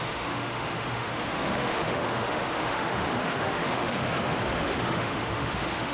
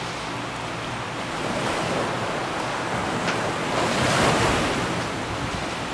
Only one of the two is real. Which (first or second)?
second